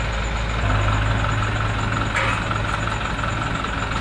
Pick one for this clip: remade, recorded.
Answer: recorded